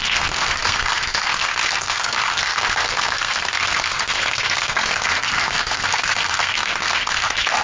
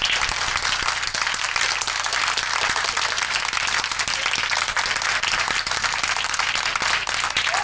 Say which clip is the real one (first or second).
second